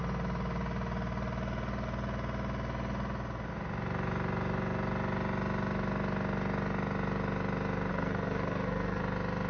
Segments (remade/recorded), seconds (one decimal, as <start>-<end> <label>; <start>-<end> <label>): 0.0-7.9 recorded; 7.9-9.0 remade; 9.0-9.5 recorded